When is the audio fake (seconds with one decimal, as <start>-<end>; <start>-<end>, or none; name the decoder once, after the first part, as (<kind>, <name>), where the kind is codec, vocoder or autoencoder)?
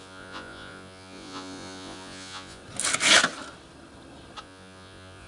0.0-2.6 (vocoder, Vocos); 4.4-5.3